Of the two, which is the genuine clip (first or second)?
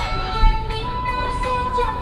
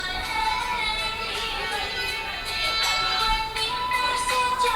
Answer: second